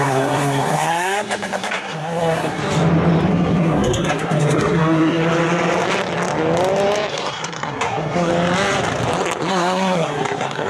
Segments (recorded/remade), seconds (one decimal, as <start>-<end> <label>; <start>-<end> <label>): 0.0-2.6 remade; 2.6-3.3 recorded; 3.3-5.2 remade; 5.2-7.1 recorded; 7.1-8.3 remade; 8.3-9.5 recorded; 9.5-10.7 remade